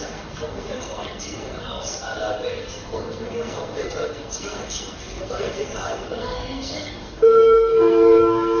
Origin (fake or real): fake